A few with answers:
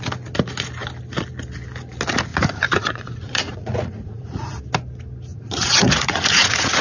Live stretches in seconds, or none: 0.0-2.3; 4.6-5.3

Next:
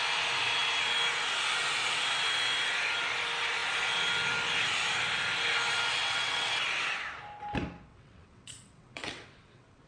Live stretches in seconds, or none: 0.0-6.0; 6.5-7.9

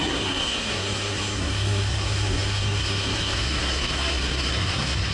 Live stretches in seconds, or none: none

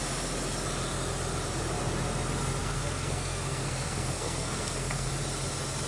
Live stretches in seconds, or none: 0.0-2.6; 5.1-5.9

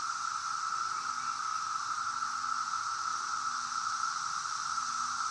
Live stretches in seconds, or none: 0.0-1.5; 2.0-3.1; 4.8-5.3

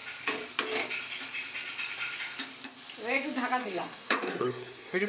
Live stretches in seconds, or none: 0.0-3.6

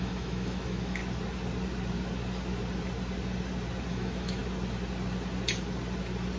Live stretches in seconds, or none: 1.0-3.9; 4.4-6.4

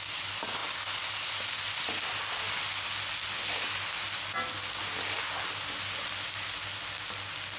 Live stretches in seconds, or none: 0.0-7.6